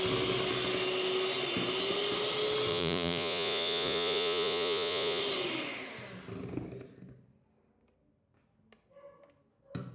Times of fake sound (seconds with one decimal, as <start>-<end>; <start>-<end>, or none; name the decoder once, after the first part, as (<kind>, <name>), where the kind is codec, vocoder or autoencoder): 2.7-5.2 (vocoder, Vocos)